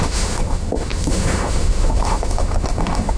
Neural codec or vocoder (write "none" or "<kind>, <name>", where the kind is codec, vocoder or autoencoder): autoencoder, DAC-VAE